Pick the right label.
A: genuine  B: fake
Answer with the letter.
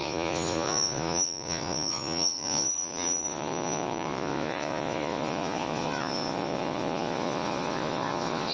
B